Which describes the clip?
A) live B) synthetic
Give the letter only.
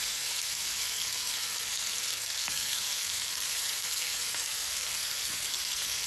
B